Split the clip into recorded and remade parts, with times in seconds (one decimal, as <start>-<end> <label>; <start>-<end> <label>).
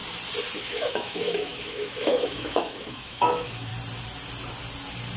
0.0-0.6 recorded; 0.6-3.7 remade; 3.7-5.2 recorded